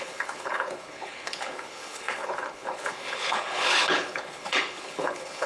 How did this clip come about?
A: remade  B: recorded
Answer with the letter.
A